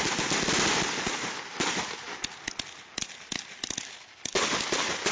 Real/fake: real